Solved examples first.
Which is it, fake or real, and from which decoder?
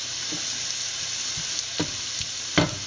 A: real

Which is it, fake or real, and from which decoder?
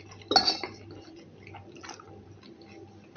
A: real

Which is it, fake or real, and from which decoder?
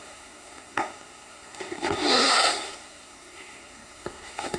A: fake, codec, SNAC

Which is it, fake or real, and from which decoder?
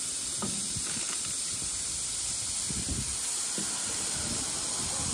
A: real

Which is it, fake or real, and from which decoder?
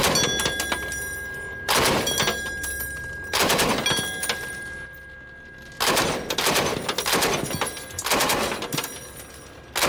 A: real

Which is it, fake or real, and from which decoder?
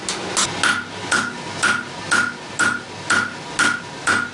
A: real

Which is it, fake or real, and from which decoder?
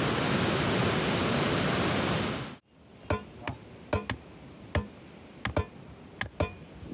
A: real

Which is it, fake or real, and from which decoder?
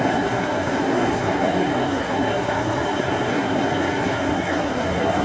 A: fake, codec, SNAC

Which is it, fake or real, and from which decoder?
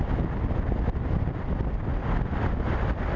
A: real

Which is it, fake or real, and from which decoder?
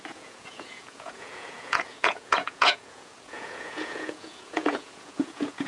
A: fake, vocoder, Vocos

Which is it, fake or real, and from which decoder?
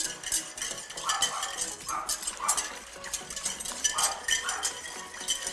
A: real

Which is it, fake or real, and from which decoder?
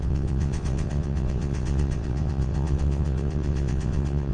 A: fake, vocoder, WaveNeXt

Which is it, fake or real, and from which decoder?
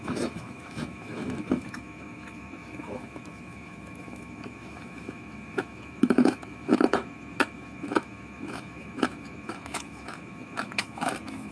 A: fake, autoencoder, DAC-VAE